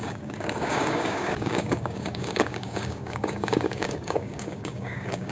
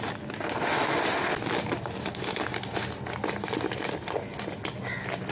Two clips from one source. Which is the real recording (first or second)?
second